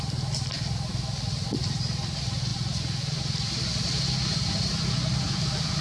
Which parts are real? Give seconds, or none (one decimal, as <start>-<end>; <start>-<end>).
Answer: 2.5-5.8